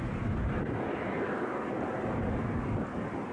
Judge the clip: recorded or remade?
recorded